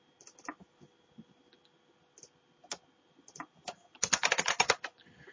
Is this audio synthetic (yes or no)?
no